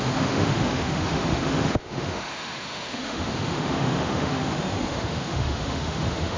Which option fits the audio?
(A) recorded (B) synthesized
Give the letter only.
B